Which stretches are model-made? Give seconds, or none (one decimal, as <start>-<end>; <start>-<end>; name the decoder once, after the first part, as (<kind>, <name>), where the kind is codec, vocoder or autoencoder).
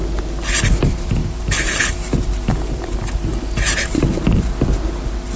1.2-4.4 (vocoder, BigVGAN v2)